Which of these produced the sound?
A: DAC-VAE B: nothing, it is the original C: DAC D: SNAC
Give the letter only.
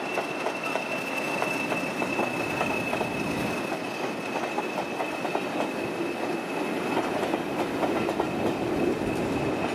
B